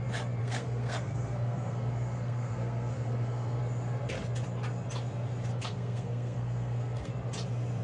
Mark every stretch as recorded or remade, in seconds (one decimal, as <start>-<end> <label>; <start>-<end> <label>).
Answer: 0.0-0.4 recorded; 0.4-3.6 remade; 3.6-5.5 recorded; 5.5-7.1 remade; 7.1-7.8 recorded